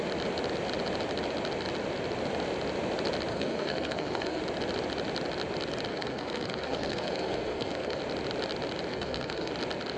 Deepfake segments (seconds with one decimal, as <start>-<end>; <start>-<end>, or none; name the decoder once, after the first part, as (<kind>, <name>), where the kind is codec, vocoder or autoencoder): 3.3-4.4 (codec, SNAC); 5.9-8.0; 8.9-9.5